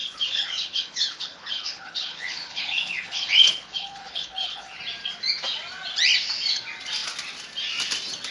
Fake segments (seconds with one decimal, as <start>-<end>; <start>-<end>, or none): 0.0-4.8